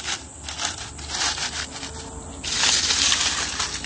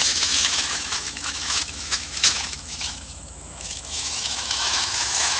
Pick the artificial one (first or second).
second